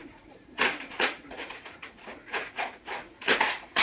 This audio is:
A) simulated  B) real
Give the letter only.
A